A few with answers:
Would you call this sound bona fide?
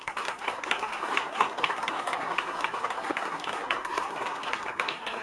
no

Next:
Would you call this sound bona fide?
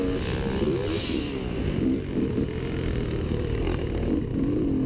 yes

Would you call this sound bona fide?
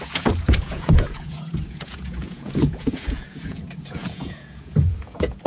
no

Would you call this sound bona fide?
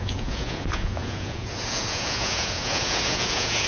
no